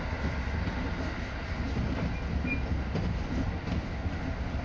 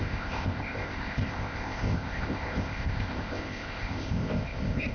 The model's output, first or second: second